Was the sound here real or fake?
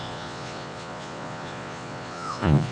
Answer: fake